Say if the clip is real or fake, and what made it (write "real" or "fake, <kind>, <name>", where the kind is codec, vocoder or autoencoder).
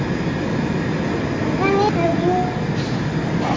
real